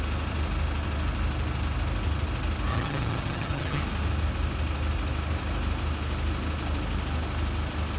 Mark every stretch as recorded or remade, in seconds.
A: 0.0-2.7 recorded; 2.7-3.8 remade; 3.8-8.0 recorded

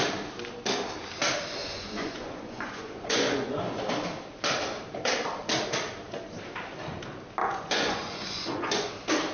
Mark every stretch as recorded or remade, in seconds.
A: 0.0-1.6 recorded; 1.6-3.6 remade; 3.6-7.4 recorded; 7.4-8.9 remade; 8.9-9.3 recorded

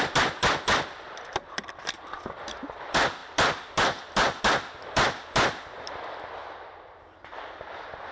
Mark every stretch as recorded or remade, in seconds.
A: 0.0-6.4 remade; 6.4-7.0 recorded; 7.0-8.1 remade

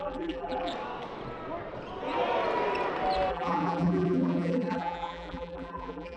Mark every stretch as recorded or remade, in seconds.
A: 0.0-0.7 remade; 0.7-3.3 recorded; 3.3-6.2 remade

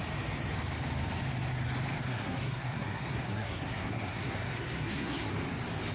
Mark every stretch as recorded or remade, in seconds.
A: 0.0-2.0 recorded; 2.0-5.3 remade; 5.3-5.9 recorded